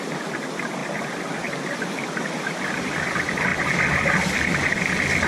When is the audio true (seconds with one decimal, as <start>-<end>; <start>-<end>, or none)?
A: 0.0-5.3

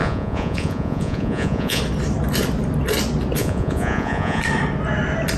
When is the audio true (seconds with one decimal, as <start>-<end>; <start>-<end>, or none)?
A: 1.8-3.4; 4.4-5.4

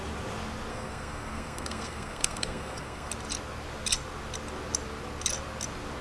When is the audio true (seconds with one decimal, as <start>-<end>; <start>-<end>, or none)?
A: 0.0-0.7; 3.1-6.0

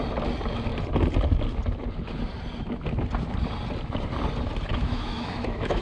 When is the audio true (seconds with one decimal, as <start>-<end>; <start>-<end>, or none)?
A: 0.0-4.7

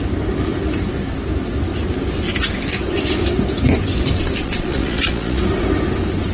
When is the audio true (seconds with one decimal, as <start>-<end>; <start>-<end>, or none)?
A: 0.0-4.4; 5.4-6.3

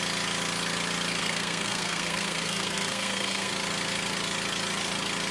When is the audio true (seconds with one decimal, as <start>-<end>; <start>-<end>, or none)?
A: 0.0-1.2; 3.5-5.3